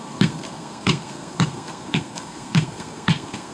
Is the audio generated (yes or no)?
yes